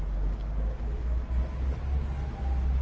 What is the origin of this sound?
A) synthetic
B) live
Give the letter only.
B